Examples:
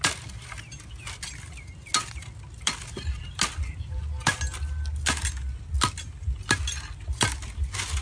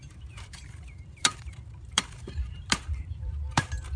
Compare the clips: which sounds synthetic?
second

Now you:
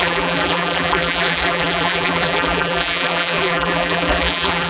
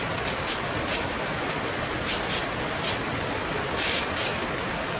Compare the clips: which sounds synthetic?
first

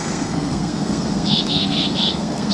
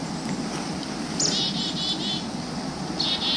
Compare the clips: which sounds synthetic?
first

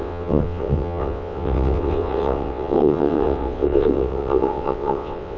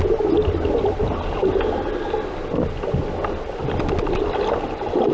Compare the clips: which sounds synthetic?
first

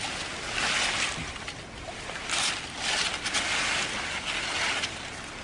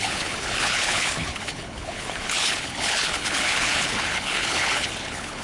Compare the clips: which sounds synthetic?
second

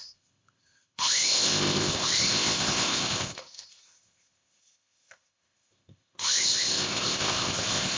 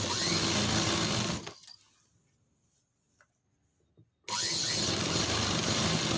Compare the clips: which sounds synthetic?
first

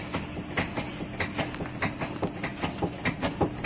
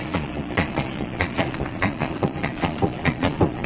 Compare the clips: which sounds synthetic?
second